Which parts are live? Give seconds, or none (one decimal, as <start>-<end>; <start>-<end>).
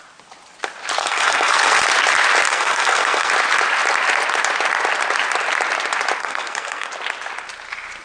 0.0-1.0; 1.8-2.5; 3.3-6.2; 6.9-8.0